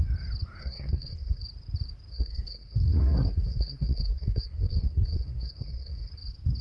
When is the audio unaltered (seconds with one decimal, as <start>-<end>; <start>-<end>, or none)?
0.0-0.6; 1.4-2.1; 6.1-6.6